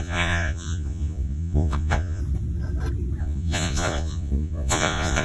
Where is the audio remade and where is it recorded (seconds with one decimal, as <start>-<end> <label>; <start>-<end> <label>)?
0.0-2.2 remade; 2.2-3.2 recorded; 3.2-5.2 remade